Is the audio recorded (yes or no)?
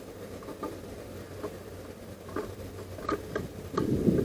yes